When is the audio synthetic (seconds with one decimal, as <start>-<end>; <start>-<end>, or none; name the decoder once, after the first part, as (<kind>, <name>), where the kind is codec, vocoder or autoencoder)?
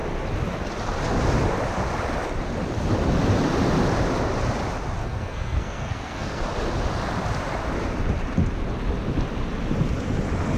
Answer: 5.0-6.4 (codec, SNAC)